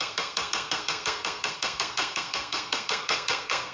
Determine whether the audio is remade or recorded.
remade